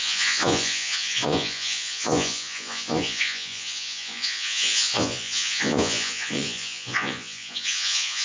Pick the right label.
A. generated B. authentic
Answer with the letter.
A